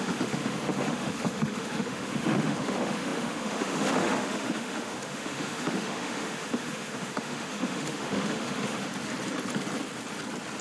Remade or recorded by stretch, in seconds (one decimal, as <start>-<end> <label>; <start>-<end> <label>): 0.0-8.9 remade; 8.9-10.6 recorded